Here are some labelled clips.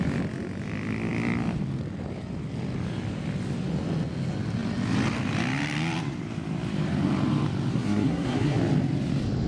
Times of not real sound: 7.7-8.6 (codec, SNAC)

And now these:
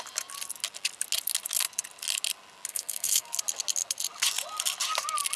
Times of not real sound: 2.7-3.3 (codec, SNAC)

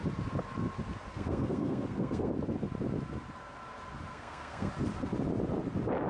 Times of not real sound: 1.1-2.3 (codec, SNAC); 4.1-4.7

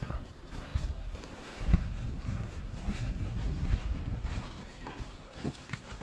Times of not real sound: 0.0-6.0 (codec, SNAC)

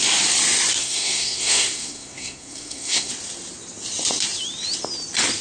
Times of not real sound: 0.8-3.1 (codec, SNAC)